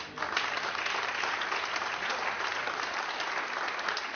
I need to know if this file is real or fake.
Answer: real